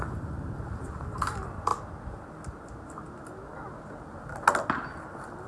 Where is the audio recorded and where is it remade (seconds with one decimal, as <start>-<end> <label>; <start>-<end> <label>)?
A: 0.0-1.7 remade; 1.7-5.0 recorded; 5.0-5.5 remade

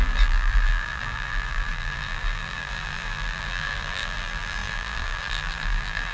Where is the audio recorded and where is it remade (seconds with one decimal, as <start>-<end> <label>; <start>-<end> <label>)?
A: 0.0-6.1 remade

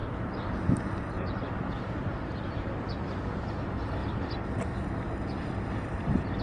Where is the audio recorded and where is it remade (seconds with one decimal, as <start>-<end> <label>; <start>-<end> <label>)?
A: 0.0-3.5 remade; 3.5-4.0 recorded; 4.0-6.4 remade

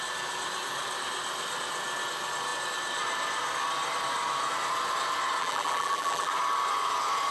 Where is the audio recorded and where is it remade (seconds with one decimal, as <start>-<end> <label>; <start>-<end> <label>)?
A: 0.0-5.4 recorded; 5.4-6.3 remade; 6.3-7.3 recorded

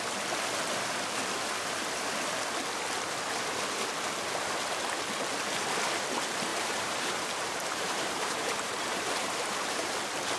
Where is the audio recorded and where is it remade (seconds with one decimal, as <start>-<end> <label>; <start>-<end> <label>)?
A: 0.0-6.5 recorded; 6.5-9.9 remade; 9.9-10.4 recorded